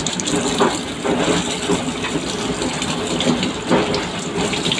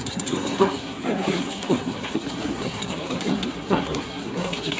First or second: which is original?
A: first